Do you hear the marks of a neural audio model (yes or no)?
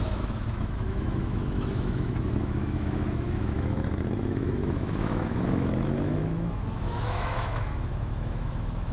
yes